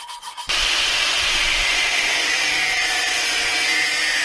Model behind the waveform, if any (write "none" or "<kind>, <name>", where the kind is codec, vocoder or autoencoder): vocoder, Vocos